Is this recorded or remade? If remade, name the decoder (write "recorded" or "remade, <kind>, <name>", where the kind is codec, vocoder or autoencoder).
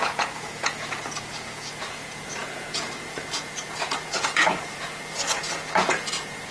remade, vocoder, Vocos